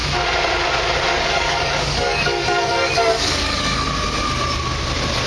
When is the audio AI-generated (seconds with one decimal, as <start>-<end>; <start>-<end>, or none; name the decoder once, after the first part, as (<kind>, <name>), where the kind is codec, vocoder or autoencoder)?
1.1-3.9 (codec, DAC)